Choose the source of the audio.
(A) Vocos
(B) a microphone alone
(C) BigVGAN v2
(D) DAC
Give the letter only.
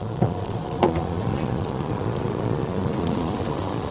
A